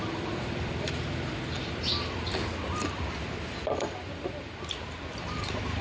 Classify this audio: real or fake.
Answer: fake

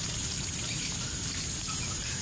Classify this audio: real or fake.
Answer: real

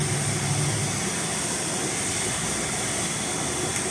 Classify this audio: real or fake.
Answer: real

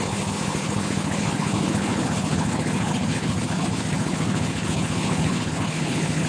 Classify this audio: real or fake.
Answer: fake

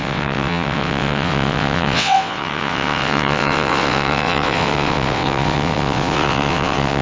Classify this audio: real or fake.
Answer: fake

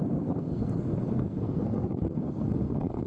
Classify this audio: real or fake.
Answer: fake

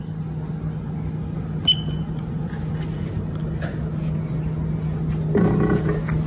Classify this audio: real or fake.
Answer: real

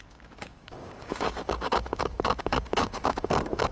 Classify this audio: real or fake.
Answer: fake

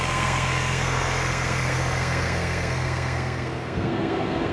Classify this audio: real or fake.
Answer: fake